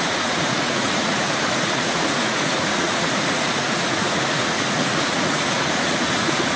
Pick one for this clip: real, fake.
fake